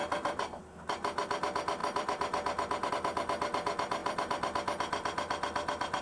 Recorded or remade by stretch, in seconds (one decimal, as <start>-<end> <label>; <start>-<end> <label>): 0.0-0.6 remade; 0.6-1.8 recorded; 1.8-2.9 remade; 2.9-4.0 recorded; 4.0-6.0 remade